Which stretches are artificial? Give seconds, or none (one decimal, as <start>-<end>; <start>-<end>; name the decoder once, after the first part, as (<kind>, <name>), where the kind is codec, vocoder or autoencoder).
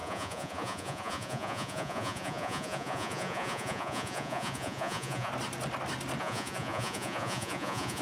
0.0-5.3 (vocoder, Vocos); 6.2-8.0